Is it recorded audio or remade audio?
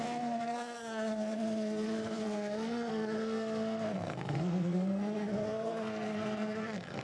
remade